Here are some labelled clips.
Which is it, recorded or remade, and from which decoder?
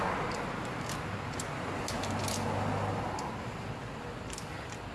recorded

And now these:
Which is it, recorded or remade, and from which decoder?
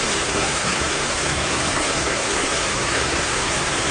remade, codec, SNAC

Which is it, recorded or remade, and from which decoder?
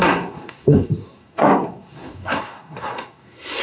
remade, codec, SNAC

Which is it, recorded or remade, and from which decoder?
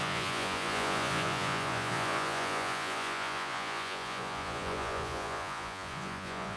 remade, vocoder, Vocos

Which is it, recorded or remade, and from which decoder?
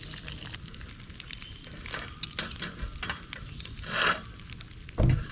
recorded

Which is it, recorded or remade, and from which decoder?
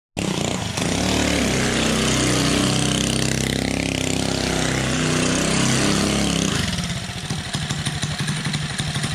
recorded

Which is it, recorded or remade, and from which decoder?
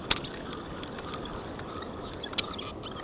recorded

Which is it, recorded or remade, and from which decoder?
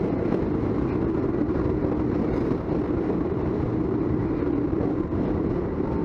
recorded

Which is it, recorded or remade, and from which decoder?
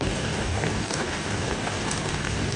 remade, codec, DAC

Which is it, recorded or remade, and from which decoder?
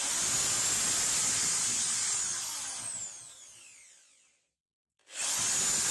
recorded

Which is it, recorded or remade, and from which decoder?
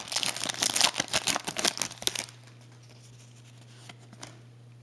recorded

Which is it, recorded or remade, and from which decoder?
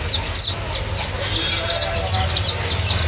recorded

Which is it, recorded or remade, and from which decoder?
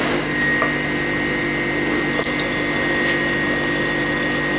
recorded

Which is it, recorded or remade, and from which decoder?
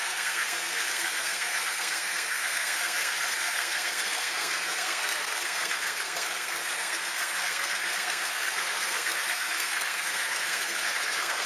remade, codec, SNAC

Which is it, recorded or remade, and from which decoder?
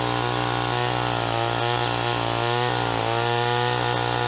recorded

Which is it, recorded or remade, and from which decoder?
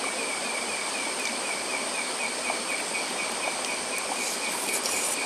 recorded